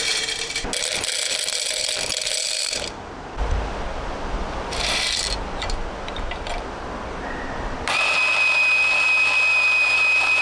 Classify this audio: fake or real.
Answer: real